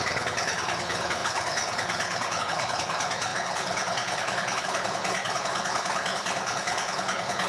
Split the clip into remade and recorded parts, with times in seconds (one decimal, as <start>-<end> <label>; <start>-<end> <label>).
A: 0.0-7.5 remade